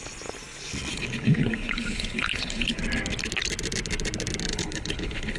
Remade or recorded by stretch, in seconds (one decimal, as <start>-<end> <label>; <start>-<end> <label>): 0.0-0.9 recorded; 0.9-2.8 remade; 2.8-4.5 recorded; 4.5-5.4 remade